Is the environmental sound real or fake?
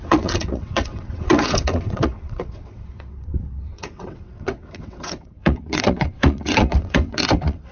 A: fake